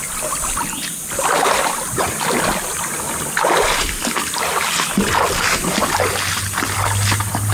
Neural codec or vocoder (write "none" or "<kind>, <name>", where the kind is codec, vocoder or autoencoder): none